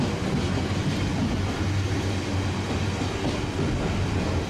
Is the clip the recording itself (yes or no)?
yes